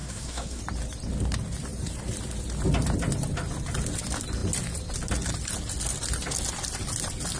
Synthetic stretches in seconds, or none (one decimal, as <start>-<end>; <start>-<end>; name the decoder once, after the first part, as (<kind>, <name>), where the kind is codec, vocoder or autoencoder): 0.0-0.6 (codec, SNAC)